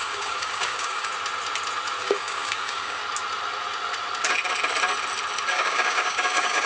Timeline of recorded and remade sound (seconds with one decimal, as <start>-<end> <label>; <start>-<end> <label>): 0.0-1.1 remade; 1.1-2.0 recorded; 2.0-3.0 remade; 3.0-5.5 recorded; 5.5-6.7 remade